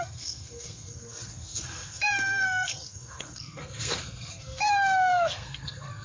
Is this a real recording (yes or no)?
no